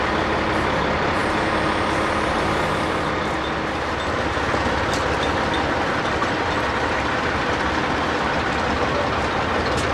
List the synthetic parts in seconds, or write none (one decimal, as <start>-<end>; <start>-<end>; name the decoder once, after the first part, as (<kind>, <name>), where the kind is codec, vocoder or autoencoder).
none